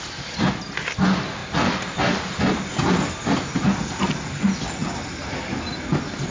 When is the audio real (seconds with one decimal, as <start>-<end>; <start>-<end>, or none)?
0.0-6.3